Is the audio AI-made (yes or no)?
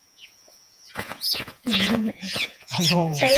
yes